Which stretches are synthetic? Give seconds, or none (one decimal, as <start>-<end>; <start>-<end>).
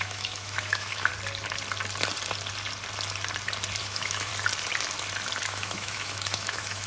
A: 0.0-1.1; 3.8-4.3; 5.4-6.9